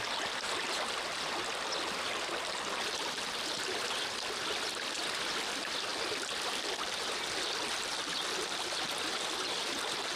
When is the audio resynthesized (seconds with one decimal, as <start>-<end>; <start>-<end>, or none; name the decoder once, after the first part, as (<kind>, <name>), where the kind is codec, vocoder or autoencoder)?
none